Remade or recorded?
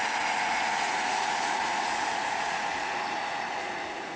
remade